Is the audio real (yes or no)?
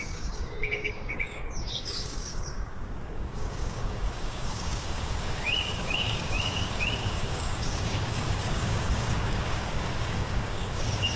no